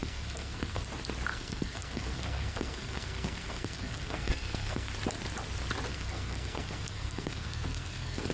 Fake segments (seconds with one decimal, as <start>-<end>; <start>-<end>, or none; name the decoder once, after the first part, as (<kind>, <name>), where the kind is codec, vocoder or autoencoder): 0.0-0.8 (codec, SNAC); 1.3-4.9; 5.9-8.3